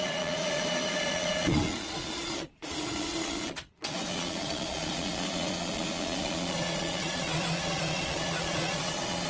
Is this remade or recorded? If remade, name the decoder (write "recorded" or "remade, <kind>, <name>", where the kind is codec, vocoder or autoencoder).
remade, vocoder, Vocos